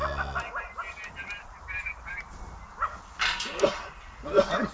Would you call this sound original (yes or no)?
yes